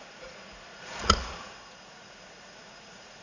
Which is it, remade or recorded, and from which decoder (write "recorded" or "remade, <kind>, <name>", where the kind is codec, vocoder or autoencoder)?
remade, vocoder, Vocos